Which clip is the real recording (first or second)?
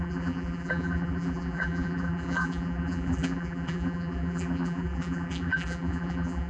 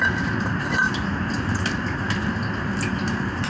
second